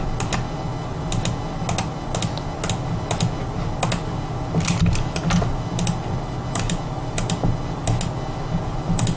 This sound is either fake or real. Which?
real